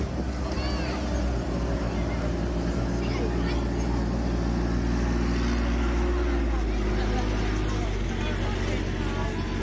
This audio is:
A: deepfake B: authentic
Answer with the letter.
B